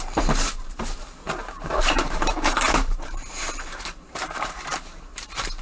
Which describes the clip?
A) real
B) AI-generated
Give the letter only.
B